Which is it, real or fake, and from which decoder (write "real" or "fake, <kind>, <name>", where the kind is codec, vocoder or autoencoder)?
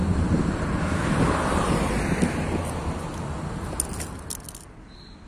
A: real